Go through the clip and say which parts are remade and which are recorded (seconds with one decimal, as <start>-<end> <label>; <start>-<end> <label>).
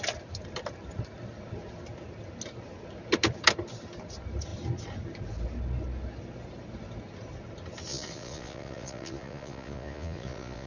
0.0-7.9 recorded; 7.9-10.7 remade